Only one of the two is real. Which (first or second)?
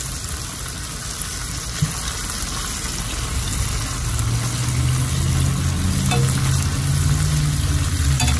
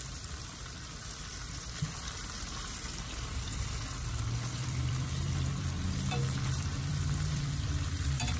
first